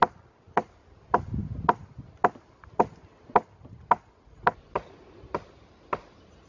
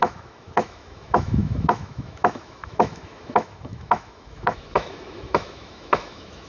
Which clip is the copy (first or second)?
second